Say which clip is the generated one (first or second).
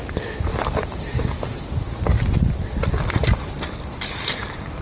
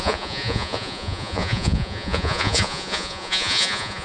second